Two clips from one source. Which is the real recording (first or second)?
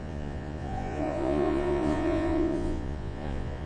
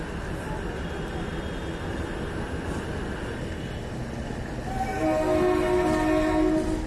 second